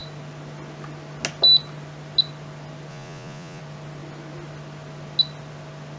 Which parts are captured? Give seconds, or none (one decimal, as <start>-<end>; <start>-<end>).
0.0-2.9; 3.6-6.0